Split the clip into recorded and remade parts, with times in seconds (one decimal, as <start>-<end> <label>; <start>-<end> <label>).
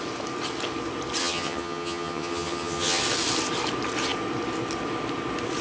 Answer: 0.0-1.2 recorded; 1.2-3.0 remade; 3.0-5.6 recorded